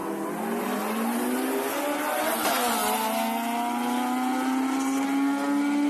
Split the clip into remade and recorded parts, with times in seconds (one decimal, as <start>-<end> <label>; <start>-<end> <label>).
0.0-5.9 recorded